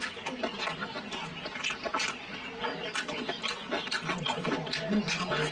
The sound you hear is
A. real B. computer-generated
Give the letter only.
A